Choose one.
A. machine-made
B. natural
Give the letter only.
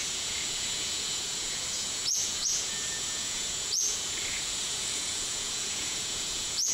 A